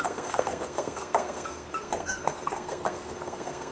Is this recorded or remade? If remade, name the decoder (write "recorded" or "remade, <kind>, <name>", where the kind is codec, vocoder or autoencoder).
remade, codec, SNAC